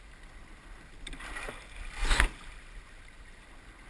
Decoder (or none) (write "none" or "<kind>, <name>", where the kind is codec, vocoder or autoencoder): none